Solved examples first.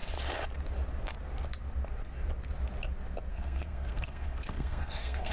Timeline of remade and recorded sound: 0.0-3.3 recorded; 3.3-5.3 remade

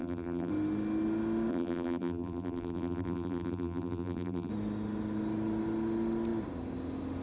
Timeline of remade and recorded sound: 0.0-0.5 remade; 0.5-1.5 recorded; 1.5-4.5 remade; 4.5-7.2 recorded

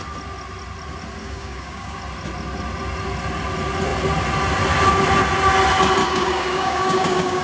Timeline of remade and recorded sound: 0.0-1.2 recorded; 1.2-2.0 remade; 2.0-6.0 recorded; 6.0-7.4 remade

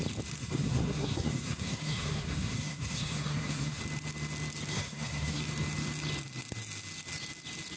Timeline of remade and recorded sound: 0.0-0.4 recorded; 0.4-3.8 remade; 3.8-4.7 recorded; 4.7-5.4 remade; 5.4-7.8 recorded

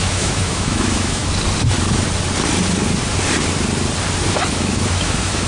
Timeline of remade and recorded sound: 0.0-1.2 remade; 1.2-4.5 recorded; 4.5-5.5 remade

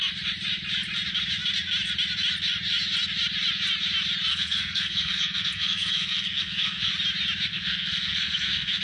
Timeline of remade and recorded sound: 0.0-4.3 recorded; 4.3-6.9 remade; 6.9-7.5 recorded; 7.5-8.8 remade